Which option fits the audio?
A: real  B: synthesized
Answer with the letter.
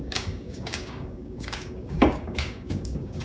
B